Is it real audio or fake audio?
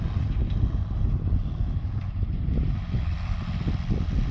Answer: real